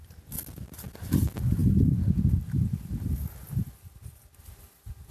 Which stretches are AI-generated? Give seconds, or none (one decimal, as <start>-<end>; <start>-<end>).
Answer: none